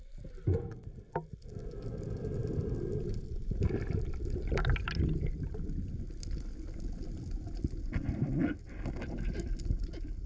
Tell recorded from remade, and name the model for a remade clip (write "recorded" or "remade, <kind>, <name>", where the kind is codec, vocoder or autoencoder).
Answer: recorded